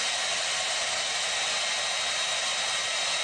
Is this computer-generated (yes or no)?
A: no